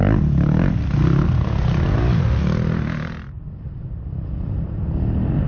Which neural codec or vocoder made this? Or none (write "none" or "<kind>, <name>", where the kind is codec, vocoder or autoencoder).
none